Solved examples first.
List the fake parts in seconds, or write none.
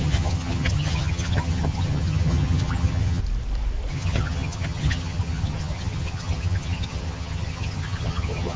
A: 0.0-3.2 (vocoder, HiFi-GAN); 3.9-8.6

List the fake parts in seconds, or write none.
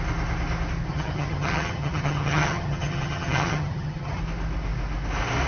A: 0.9-4.2 (vocoder, HiFi-GAN)